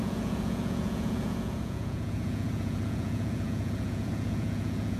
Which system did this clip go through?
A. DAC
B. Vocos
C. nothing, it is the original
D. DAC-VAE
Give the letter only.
B